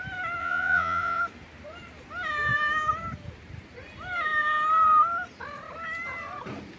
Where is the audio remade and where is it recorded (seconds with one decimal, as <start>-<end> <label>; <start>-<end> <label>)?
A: 0.0-0.4 recorded; 0.4-1.2 remade; 1.2-6.8 recorded